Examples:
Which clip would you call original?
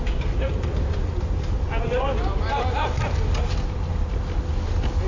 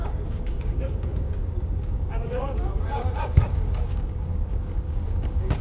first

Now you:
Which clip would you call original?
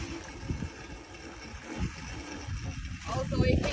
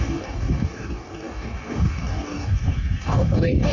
first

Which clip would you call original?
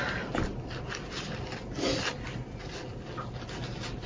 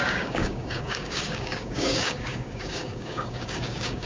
first